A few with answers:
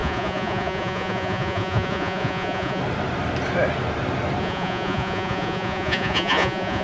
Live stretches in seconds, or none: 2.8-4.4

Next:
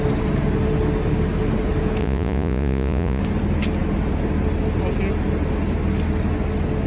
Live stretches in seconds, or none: 0.0-2.0; 3.2-6.9

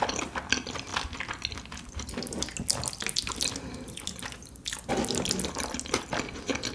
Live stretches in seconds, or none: 0.0-6.7